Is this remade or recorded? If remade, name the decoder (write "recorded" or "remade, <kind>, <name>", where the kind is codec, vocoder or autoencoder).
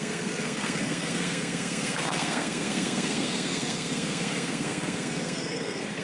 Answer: remade, codec, SNAC